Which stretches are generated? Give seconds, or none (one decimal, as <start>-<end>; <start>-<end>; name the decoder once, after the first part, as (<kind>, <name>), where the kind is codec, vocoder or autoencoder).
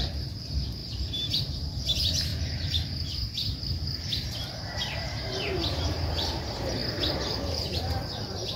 0.0-8.6 (vocoder, BigVGAN v2)